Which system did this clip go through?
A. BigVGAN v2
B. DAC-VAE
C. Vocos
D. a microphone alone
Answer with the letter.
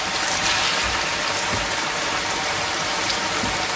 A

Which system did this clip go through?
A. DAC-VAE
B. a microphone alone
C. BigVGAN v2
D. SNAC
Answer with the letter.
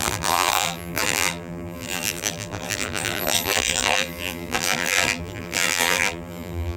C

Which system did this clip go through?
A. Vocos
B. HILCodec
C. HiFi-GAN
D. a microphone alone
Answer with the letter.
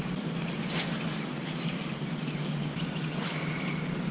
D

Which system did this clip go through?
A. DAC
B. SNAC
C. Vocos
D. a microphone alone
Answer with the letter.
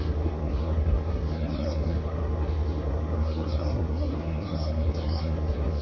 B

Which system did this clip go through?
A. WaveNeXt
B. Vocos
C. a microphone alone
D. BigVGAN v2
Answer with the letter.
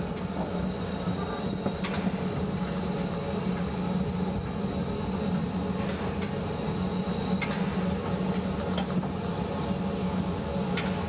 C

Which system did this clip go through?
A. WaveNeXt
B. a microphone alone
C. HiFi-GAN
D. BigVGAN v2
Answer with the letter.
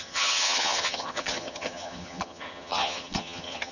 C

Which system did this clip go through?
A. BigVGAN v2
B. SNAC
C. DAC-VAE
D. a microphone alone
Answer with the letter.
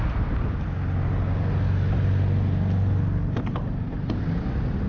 D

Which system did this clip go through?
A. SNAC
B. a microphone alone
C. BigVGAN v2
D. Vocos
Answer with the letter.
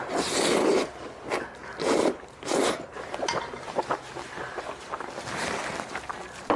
B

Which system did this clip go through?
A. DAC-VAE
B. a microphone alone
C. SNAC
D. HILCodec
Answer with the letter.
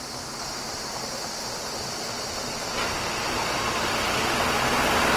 B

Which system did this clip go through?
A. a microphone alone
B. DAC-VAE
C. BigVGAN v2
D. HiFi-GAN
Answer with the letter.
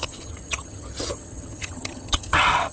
D